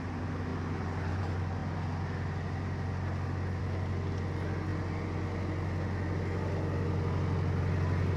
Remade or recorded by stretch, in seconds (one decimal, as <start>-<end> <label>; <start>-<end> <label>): 0.0-8.2 recorded